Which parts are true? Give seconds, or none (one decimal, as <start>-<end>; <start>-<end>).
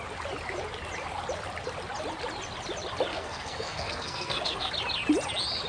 0.0-3.1; 4.7-5.7